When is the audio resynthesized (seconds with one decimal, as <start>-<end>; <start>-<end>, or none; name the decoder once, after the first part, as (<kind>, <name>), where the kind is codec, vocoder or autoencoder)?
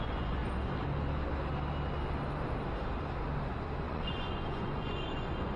0.0-0.4 (vocoder, Vocos); 3.8-5.6